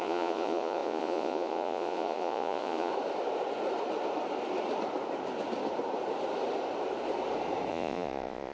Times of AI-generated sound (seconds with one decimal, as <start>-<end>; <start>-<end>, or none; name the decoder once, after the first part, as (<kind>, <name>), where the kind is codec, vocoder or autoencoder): 0.0-2.9 (vocoder, Vocos); 7.7-8.5